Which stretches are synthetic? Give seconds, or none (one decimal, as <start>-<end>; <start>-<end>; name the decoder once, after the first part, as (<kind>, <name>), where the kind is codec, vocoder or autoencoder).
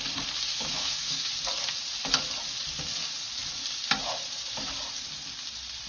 0.5-1.3 (autoencoder, DAC-VAE)